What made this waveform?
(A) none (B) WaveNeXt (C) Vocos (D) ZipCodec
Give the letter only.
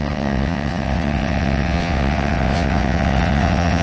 B